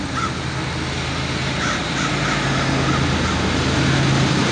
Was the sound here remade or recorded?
recorded